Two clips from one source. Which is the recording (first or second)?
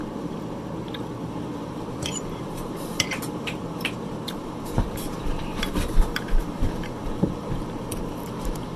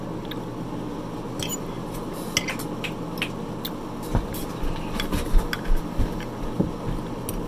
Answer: second